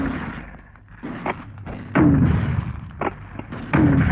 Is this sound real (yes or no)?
yes